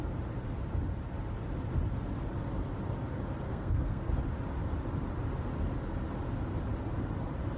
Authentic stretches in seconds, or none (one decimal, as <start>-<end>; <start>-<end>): 0.0-3.5; 4.0-7.6